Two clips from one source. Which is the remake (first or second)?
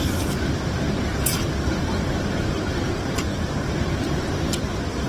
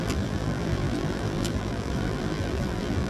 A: second